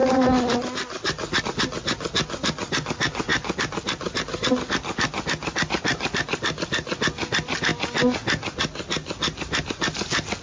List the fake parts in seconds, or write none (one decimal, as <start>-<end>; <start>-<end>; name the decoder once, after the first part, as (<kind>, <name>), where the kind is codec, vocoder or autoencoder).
none